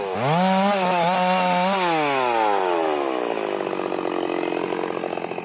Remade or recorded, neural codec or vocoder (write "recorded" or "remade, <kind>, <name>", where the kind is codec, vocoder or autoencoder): recorded